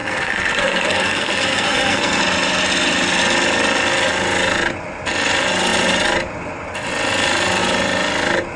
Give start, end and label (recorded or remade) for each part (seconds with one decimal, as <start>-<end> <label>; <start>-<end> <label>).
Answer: 0.0-2.2 remade; 2.2-8.6 recorded